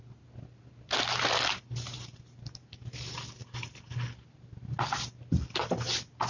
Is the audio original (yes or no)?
yes